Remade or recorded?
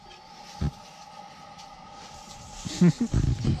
recorded